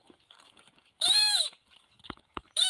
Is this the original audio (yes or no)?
no